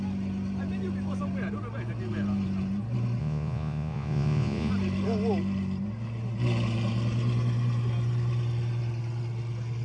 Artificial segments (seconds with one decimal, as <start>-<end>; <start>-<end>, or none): 3.2-4.7